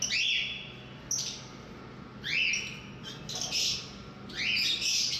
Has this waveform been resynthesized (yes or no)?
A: no